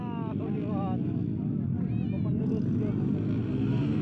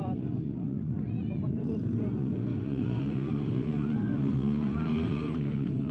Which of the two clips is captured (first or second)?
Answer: first